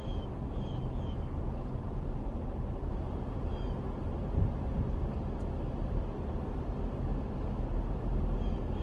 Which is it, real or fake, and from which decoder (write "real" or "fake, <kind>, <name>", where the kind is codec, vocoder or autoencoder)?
real